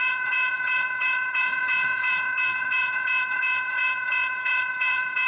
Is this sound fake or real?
fake